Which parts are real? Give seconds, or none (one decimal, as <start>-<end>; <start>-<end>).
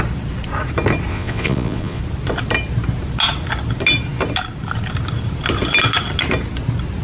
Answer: 0.0-1.1; 2.0-7.0